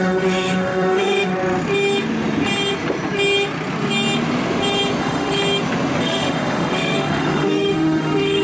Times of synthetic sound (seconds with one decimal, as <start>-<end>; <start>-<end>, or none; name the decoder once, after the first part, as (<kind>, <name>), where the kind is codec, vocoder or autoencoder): 0.0-1.3 (autoencoder, DAC-VAE); 5.0-5.4; 6.0-8.4